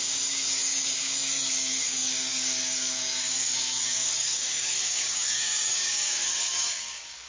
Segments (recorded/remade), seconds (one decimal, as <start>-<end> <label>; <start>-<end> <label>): 0.0-7.3 remade